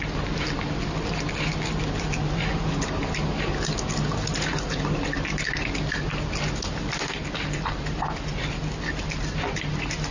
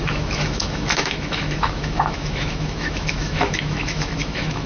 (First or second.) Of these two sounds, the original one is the first